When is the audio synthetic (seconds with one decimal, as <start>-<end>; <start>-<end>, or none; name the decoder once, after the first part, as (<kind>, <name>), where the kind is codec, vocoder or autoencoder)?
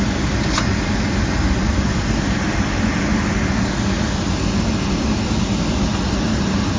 none